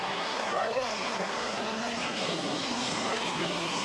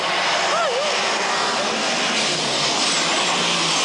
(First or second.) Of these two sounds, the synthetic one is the first